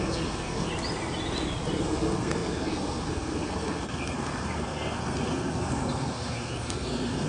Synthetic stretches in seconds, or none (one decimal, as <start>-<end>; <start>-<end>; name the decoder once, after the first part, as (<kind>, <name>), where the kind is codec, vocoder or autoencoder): 0.0-0.7 (codec, SNAC); 1.8-7.3

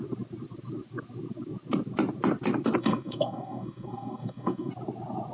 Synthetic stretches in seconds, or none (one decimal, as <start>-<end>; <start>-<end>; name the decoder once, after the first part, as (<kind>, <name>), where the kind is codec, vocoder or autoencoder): 2.8-4.7 (codec, SNAC)

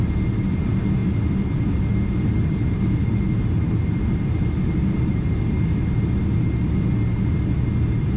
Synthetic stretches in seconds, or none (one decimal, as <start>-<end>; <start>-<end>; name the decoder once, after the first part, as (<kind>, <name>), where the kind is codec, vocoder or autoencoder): none

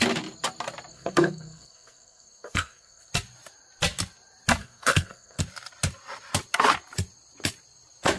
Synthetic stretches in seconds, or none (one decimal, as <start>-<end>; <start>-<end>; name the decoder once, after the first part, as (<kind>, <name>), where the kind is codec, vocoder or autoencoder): 0.9-3.1 (codec, SNAC); 4.6-5.4

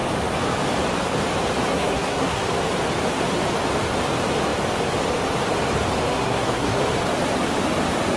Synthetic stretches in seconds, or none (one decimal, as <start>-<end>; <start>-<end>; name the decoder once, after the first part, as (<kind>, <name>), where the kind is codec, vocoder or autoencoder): 1.7-2.4 (codec, SNAC); 6.1-6.8

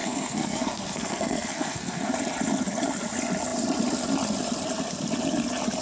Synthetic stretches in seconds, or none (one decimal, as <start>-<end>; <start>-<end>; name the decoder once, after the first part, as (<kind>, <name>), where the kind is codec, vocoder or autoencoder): 0.0-2.1 (codec, SNAC)